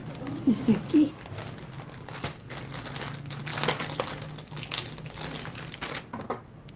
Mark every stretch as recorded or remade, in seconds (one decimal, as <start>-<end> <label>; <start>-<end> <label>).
0.0-6.8 recorded